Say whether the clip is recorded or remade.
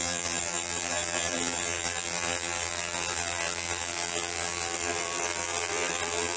remade